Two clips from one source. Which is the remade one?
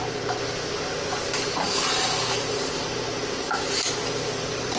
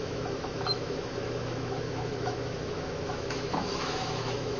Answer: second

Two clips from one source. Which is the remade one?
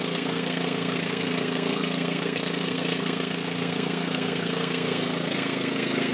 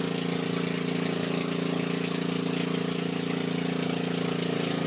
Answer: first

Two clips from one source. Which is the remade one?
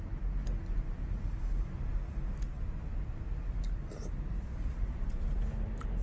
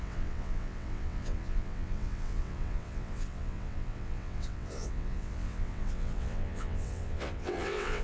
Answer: second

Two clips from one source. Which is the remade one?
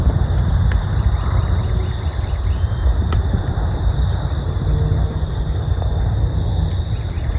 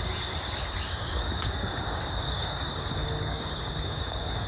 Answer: second